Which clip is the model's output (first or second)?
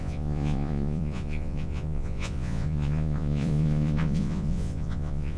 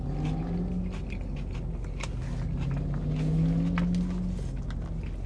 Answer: first